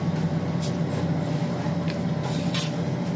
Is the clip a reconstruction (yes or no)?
no